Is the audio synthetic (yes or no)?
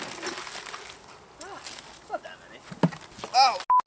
no